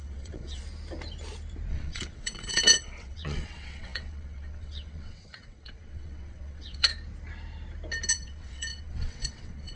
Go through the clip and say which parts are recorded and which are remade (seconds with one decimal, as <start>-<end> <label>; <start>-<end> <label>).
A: 0.0-0.6 remade; 0.6-1.7 recorded; 1.7-6.9 remade; 6.9-8.1 recorded; 8.1-9.8 remade